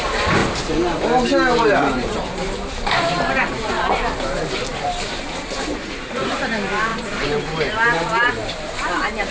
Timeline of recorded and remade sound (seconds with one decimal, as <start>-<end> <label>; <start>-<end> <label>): 0.0-9.3 recorded